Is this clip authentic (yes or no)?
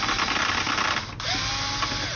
yes